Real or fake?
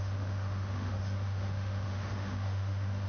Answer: fake